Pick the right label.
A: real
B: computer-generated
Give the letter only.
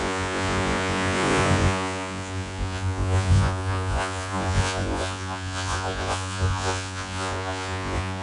B